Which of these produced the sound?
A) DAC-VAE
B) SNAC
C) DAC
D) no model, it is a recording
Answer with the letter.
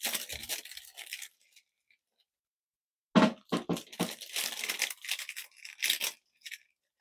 D